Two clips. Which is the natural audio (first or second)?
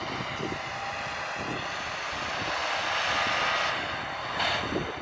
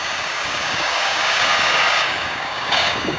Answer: first